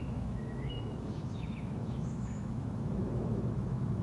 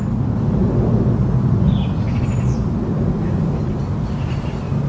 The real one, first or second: second